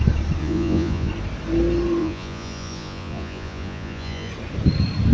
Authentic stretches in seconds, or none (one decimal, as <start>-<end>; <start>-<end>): 0.0-0.4; 1.1-2.0; 4.3-5.1